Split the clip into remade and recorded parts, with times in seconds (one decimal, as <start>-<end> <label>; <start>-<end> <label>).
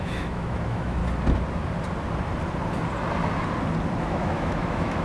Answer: 0.0-1.0 remade; 1.0-4.0 recorded; 4.0-5.0 remade